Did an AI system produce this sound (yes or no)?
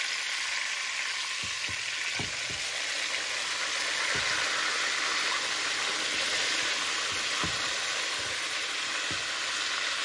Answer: no